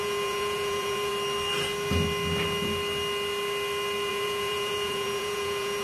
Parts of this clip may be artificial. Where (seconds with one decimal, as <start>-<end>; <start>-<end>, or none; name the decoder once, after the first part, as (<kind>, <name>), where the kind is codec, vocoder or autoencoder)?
0.0-1.1 (vocoder, Vocos); 4.1-5.8